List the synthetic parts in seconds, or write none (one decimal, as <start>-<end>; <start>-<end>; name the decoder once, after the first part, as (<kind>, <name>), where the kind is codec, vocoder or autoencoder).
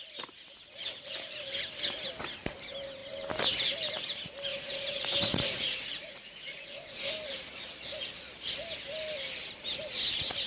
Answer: 4.5-7.1 (vocoder, Vocos)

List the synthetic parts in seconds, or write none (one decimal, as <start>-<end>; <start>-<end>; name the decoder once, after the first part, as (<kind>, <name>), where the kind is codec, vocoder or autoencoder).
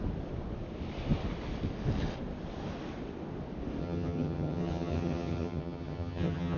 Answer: 3.8-6.6 (vocoder, HiFi-GAN)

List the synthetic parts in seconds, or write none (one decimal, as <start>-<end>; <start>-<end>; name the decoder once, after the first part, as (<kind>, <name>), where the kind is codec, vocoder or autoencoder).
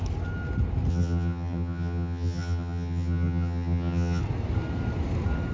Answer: 0.9-4.2 (vocoder, HiFi-GAN)